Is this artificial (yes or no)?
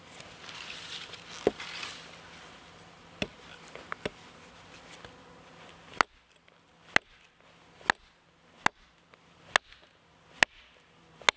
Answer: no